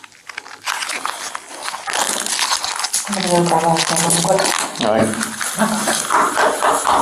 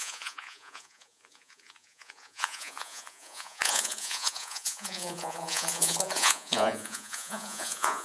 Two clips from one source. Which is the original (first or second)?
first